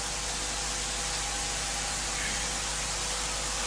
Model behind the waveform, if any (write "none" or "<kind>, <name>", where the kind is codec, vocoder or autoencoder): none